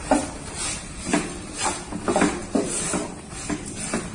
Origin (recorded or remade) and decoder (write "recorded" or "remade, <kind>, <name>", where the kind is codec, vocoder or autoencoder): recorded